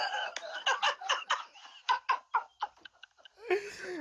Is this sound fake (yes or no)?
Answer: no